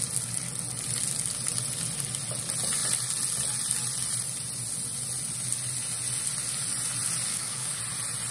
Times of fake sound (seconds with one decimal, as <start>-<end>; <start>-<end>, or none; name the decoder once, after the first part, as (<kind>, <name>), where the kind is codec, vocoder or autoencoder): 7.3-7.8 (codec, DAC)